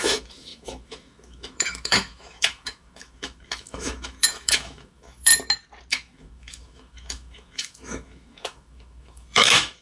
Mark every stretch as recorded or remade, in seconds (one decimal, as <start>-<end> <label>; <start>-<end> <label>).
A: 0.0-5.3 remade; 5.3-5.9 recorded; 5.9-9.8 remade